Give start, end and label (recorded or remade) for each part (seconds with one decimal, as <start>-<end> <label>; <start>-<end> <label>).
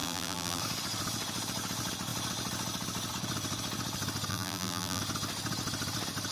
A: 0.0-0.6 remade; 0.6-4.3 recorded; 4.3-5.0 remade; 5.0-6.3 recorded